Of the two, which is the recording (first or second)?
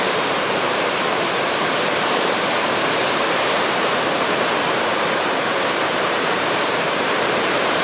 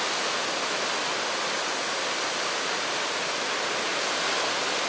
second